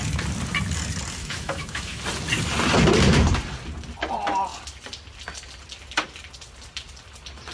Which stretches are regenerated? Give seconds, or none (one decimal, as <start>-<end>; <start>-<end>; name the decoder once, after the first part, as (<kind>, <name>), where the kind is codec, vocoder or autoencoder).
1.2-2.0 (autoencoder, DAC-VAE)